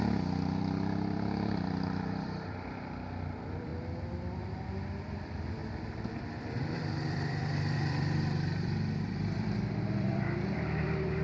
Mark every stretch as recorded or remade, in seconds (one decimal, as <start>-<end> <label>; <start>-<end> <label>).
0.0-5.6 remade; 5.6-6.1 recorded; 6.1-11.2 remade